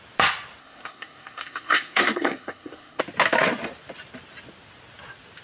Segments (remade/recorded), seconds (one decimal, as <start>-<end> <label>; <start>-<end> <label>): 0.0-0.6 recorded; 0.6-3.0 remade; 3.0-5.4 recorded